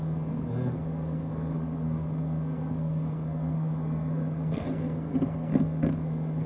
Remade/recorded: remade